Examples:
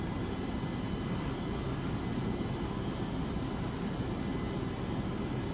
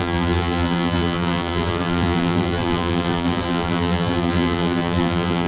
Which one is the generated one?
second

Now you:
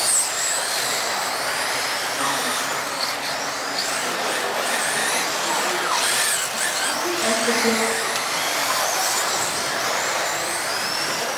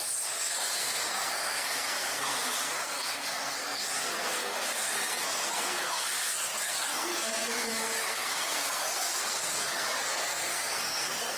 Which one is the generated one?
second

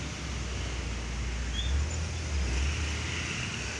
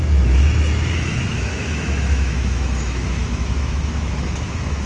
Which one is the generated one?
second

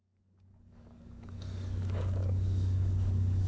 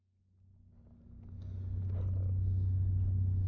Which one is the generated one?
first